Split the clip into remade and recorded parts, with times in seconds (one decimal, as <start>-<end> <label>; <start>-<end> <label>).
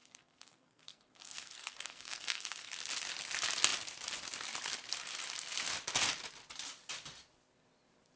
0.0-2.7 remade; 2.7-8.2 recorded